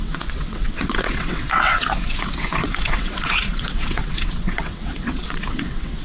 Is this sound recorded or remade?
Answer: remade